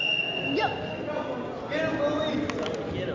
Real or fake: real